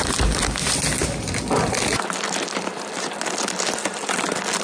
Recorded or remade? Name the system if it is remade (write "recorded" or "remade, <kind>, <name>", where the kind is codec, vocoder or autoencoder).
recorded